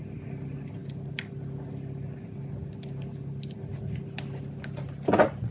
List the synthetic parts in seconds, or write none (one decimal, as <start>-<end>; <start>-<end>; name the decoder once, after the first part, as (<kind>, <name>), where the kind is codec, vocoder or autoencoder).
none